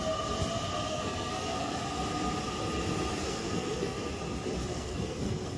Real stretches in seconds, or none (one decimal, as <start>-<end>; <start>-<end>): 0.0-0.9; 1.8-3.1; 4.1-4.6